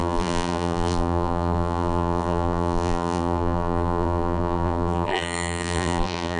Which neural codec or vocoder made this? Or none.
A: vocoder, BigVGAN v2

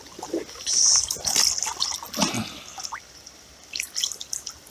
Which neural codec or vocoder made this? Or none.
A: none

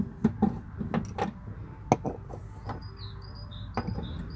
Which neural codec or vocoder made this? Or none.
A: none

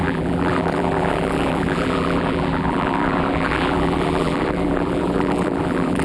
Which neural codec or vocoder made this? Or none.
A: vocoder, BigVGAN v2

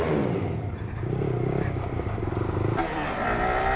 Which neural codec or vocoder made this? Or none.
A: vocoder, BigVGAN v2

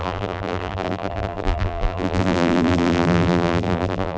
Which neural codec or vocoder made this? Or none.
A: vocoder, BigVGAN v2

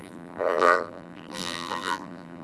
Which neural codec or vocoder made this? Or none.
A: vocoder, BigVGAN v2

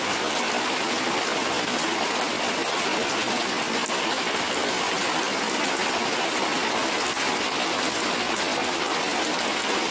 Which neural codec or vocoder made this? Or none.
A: none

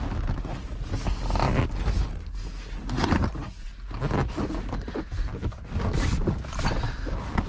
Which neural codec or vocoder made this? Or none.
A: none